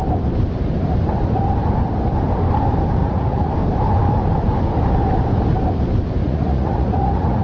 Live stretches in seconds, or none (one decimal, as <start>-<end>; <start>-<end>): 0.0-3.0; 3.5-6.2